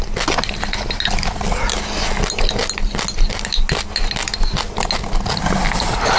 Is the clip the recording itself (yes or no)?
yes